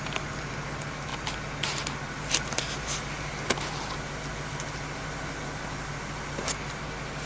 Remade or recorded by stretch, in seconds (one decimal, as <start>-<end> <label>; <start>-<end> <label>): 0.0-7.3 recorded